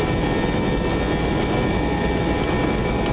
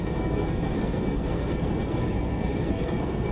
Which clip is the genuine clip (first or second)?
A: first